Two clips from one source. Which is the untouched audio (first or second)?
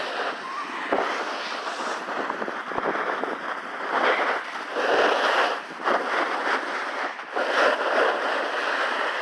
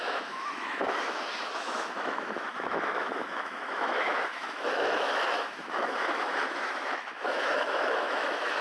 first